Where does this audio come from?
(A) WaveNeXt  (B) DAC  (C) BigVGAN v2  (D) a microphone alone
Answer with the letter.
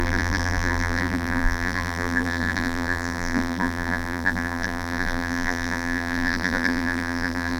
C